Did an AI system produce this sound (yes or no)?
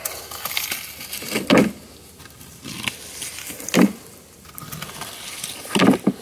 no